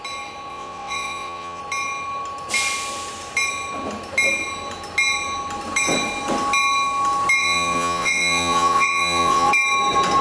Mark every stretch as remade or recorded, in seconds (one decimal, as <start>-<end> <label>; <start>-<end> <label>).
0.0-0.5 recorded; 0.5-1.6 remade; 1.6-7.4 recorded; 7.4-9.5 remade; 9.5-10.2 recorded